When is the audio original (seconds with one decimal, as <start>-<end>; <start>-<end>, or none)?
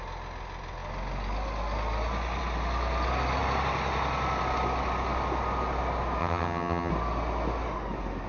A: 0.0-6.2; 6.9-8.3